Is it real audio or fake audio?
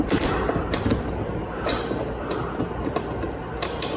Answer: fake